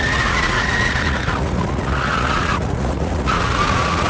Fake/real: fake